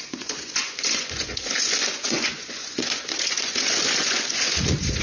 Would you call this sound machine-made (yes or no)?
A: yes